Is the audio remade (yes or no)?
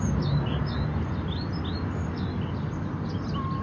no